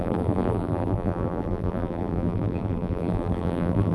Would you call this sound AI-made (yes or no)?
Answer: yes